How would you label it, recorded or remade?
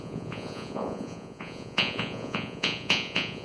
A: remade